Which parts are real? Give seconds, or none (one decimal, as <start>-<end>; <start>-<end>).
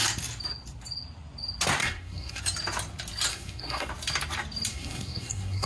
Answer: 0.0-1.8; 2.4-3.3; 3.9-4.7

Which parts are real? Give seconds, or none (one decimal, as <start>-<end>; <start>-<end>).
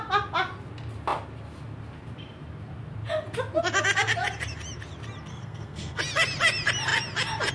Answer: 0.0-5.3; 6.0-7.5